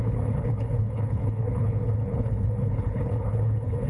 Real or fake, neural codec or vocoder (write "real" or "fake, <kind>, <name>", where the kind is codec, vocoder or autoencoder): fake, codec, HILCodec